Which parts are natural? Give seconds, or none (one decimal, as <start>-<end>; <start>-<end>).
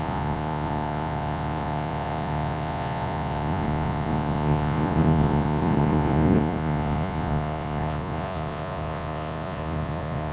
none